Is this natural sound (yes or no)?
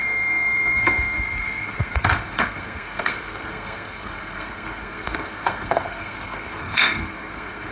no